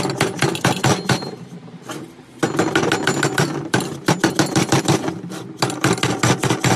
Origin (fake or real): real